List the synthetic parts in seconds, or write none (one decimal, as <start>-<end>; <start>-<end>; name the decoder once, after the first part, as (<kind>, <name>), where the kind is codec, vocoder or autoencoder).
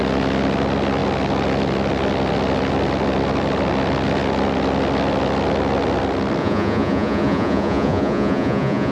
6.4-8.9 (vocoder, Vocos)